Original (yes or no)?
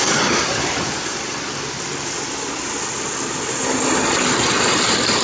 yes